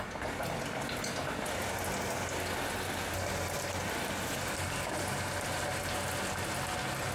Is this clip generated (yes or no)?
no